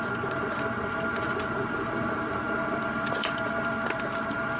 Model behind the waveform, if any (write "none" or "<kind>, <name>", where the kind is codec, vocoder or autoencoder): vocoder, BigVGAN v2